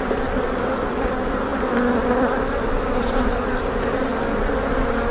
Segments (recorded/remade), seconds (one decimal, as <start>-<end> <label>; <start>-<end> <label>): 0.0-5.1 recorded